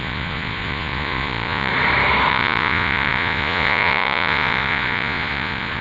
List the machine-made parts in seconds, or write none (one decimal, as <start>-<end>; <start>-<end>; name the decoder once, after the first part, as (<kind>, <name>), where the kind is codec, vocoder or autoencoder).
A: 0.0-1.7 (vocoder, Vocos); 2.3-5.8